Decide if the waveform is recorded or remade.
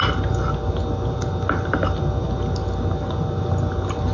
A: recorded